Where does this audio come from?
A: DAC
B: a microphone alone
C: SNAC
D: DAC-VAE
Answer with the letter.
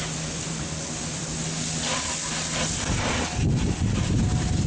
B